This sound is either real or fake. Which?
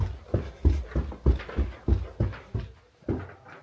real